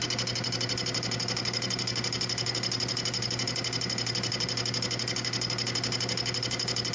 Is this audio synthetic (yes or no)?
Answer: no